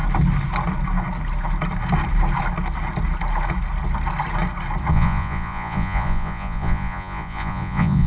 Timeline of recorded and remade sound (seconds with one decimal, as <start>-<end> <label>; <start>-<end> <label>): 0.0-4.9 recorded; 4.9-8.1 remade